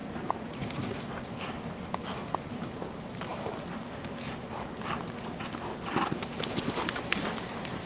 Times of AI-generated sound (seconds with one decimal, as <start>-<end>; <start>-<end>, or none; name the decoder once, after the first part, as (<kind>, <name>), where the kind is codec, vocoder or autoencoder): 0.0-1.0 (vocoder, Vocos)